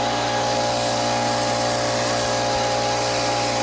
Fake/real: real